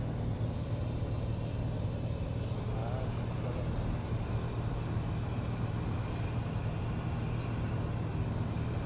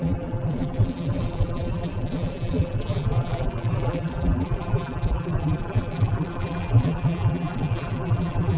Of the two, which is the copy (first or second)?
second